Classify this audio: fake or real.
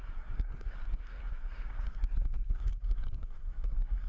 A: fake